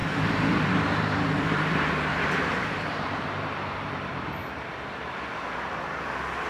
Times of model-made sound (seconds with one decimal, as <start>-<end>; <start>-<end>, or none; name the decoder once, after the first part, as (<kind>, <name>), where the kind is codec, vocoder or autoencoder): 0.0-0.7 (vocoder, BigVGAN v2); 2.1-5.8